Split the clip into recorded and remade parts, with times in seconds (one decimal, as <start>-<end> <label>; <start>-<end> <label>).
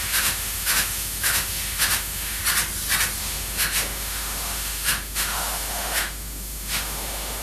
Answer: 0.0-2.4 remade; 2.4-3.2 recorded; 3.2-7.4 remade